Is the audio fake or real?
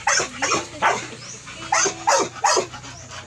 real